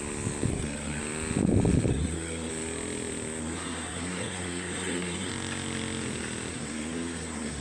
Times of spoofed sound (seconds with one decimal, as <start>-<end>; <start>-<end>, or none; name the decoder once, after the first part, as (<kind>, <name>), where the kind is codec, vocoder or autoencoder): 0.5-1.0 (codec, SNAC); 1.9-2.5; 3.4-5.3; 6.5-7.6

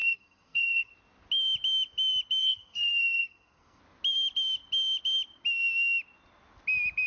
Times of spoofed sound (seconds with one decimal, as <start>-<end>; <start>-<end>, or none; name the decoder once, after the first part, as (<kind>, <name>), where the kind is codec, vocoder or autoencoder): 0.0-0.9 (codec, SNAC); 2.4-3.8

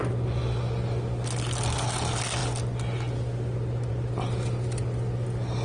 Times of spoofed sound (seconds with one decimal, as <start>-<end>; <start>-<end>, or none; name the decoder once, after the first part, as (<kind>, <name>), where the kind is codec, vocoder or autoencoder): none